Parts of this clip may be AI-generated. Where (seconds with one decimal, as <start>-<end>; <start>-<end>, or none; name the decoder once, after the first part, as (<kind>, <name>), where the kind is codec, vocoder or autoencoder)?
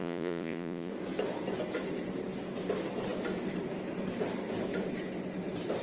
0.0-0.9 (vocoder, Vocos)